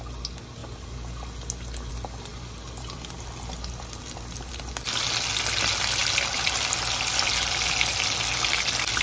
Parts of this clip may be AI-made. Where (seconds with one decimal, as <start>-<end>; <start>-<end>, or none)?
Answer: none